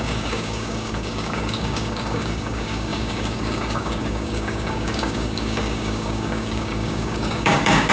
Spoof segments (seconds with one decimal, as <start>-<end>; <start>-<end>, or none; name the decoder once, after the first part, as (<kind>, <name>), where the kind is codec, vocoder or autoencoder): 0.0-7.9 (codec, DAC)